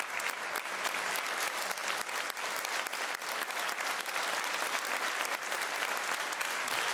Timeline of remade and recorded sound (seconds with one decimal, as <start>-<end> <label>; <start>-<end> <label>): 0.0-6.9 recorded